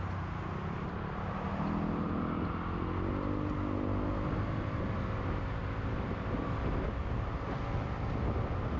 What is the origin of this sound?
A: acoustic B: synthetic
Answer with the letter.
A